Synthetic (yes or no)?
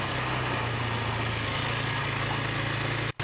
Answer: no